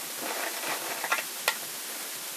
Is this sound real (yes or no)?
yes